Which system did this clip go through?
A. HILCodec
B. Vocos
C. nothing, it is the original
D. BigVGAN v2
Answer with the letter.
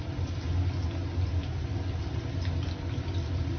C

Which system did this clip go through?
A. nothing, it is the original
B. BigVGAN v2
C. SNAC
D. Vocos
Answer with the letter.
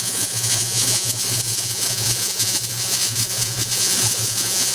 D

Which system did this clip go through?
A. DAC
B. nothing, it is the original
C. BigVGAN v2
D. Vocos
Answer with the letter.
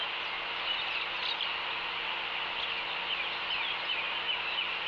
B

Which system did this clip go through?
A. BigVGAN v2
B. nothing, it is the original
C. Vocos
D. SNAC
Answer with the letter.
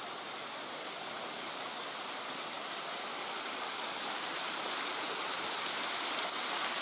B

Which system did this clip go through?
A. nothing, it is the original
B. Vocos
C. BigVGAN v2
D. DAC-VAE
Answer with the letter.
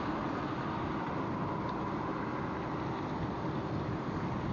A